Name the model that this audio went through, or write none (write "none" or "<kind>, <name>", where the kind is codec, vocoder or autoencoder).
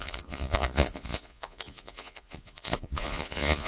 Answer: vocoder, Vocos